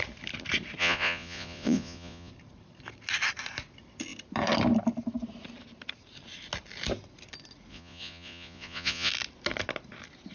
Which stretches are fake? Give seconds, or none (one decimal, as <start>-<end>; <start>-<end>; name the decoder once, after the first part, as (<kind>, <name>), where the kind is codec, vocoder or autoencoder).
0.8-2.3 (vocoder, Vocos); 7.7-9.1